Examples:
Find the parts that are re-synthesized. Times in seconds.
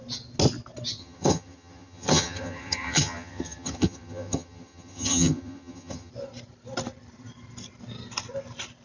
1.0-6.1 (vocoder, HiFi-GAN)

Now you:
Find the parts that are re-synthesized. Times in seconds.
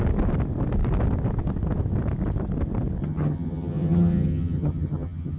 3.0-5.4 (vocoder, HiFi-GAN)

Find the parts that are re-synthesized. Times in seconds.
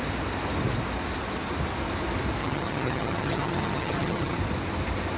2.4-4.4 (vocoder, HiFi-GAN)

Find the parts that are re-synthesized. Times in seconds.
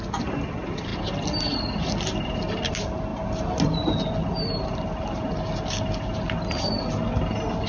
none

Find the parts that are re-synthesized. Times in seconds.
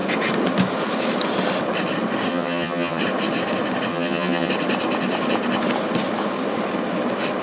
2.3-3.0 (vocoder, HiFi-GAN); 3.9-4.5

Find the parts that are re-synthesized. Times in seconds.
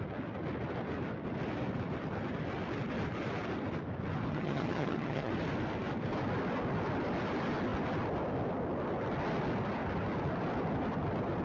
4.3-5.3 (vocoder, HiFi-GAN)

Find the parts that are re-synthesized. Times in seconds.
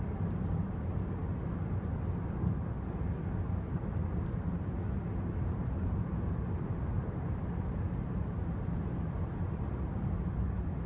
none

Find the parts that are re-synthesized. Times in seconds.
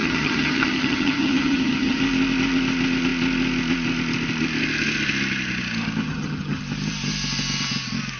0.0-2.0 (vocoder, HiFi-GAN); 6.0-6.6